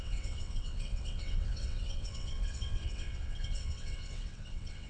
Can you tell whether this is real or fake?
fake